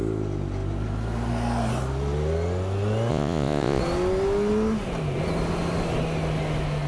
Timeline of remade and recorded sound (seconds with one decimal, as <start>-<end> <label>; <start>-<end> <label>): 0.0-3.1 recorded; 3.1-3.8 remade; 3.8-6.9 recorded